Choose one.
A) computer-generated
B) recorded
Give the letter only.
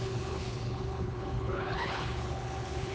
A